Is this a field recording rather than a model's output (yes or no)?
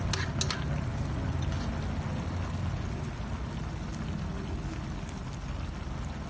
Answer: yes